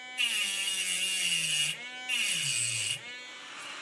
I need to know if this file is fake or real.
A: real